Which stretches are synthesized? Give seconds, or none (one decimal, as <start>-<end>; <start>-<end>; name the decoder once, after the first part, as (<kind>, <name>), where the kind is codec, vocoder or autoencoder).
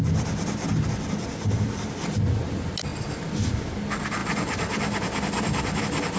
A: none